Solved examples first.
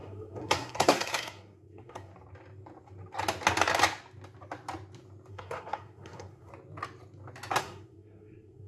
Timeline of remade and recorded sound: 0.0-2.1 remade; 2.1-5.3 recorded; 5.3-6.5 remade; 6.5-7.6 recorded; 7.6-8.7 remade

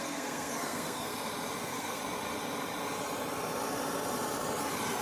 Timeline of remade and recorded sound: 0.0-1.1 remade; 1.1-1.6 recorded; 1.6-2.0 remade; 2.0-5.0 recorded

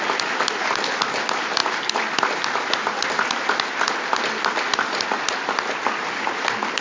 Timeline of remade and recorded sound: 0.0-6.8 recorded

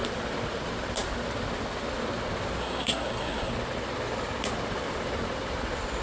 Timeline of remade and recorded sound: 0.0-2.6 recorded; 2.6-3.5 remade; 3.5-6.0 recorded